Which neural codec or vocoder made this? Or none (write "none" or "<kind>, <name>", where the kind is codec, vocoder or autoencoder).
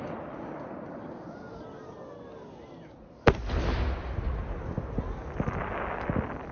none